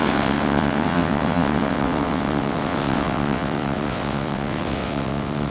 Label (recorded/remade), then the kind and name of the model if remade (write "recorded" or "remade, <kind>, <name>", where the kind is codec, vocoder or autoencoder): remade, vocoder, WaveNeXt